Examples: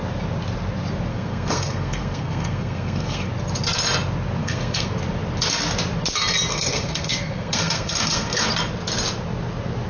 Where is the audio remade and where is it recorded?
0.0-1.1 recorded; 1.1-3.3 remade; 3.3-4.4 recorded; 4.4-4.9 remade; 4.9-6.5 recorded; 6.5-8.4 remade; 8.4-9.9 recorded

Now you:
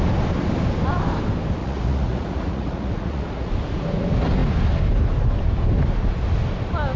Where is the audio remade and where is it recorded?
0.0-1.6 recorded; 1.6-3.5 remade; 3.5-7.0 recorded

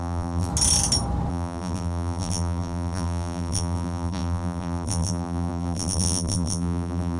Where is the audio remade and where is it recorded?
0.0-0.5 remade; 0.5-1.3 recorded; 1.3-7.2 remade

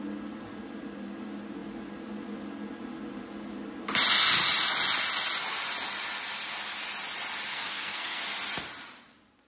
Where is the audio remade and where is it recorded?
0.0-7.5 recorded; 7.5-8.2 remade; 8.2-9.5 recorded